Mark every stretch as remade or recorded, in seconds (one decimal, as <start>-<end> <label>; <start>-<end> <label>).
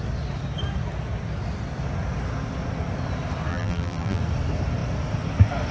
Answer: 0.0-3.5 recorded; 3.5-4.2 remade; 4.2-5.7 recorded